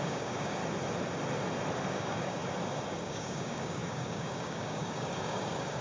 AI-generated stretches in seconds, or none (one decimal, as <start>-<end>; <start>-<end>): 0.0-0.6; 1.9-2.4; 2.9-5.8